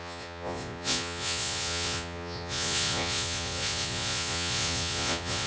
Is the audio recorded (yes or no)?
no